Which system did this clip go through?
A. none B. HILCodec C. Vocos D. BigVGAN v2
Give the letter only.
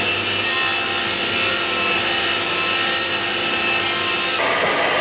A